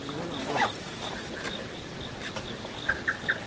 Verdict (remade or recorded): recorded